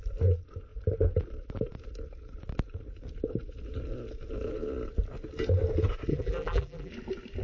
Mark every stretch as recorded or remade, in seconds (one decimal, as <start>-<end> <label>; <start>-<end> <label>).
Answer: 0.0-6.1 recorded; 6.1-6.9 remade; 6.9-7.4 recorded